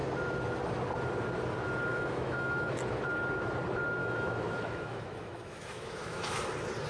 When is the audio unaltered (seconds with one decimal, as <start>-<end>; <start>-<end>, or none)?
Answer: 0.0-1.9; 2.7-4.0; 6.4-6.9